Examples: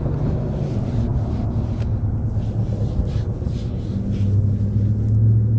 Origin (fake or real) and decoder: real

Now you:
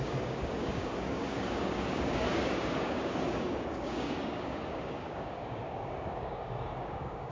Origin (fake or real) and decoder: fake, codec, DAC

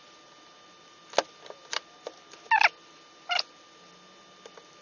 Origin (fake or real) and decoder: real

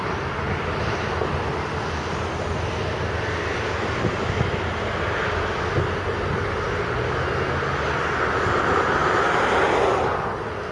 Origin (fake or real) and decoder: real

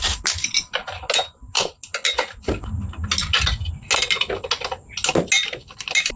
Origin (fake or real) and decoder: real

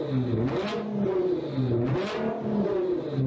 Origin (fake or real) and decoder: real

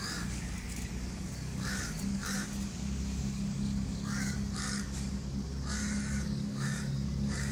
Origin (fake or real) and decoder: fake, codec, DAC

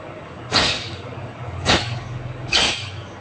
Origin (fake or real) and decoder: fake, codec, DAC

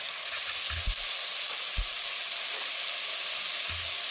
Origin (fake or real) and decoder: real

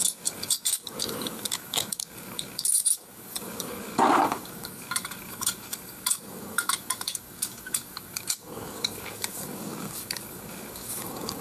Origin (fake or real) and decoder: fake, codec, DAC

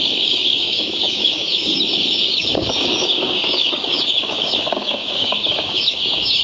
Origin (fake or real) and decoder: fake, codec, DAC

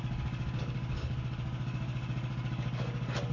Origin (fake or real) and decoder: fake, codec, DAC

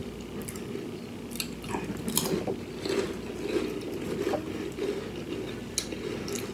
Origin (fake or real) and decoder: real